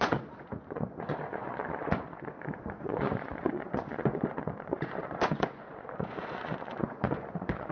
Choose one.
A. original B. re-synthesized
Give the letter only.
B